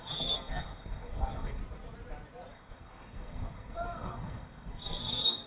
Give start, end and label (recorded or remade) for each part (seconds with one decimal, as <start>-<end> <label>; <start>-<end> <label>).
0.0-1.6 remade; 1.6-2.5 recorded; 2.5-5.5 remade